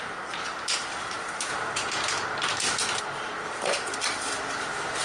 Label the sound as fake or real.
fake